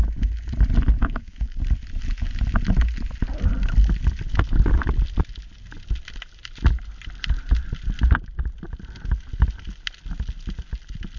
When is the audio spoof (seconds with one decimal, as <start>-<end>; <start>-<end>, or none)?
1.0-1.6